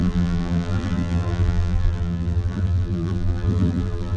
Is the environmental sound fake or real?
fake